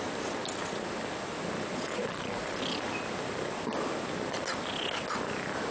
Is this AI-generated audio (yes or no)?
no